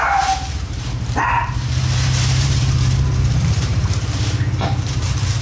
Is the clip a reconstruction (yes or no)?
yes